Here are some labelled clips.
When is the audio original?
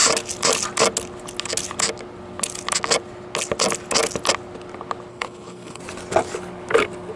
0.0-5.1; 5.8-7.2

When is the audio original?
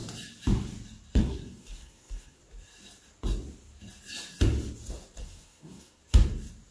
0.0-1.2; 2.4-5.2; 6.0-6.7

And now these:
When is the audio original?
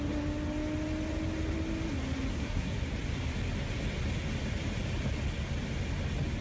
0.0-2.3; 2.8-6.4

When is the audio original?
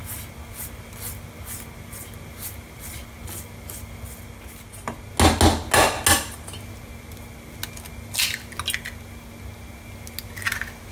0.0-10.9